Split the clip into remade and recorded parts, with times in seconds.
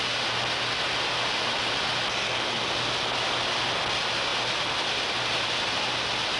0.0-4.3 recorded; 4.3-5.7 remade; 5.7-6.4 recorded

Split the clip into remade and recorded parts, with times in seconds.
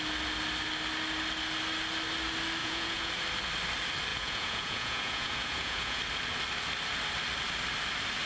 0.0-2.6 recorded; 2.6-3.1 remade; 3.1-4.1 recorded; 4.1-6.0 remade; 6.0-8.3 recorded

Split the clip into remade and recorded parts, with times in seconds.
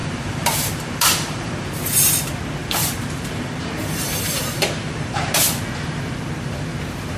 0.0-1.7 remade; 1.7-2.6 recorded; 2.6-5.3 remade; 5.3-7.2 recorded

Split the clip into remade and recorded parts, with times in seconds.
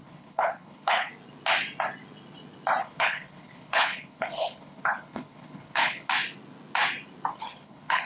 0.0-1.1 remade; 1.1-2.8 recorded; 2.8-6.1 remade; 6.1-7.3 recorded; 7.3-8.1 remade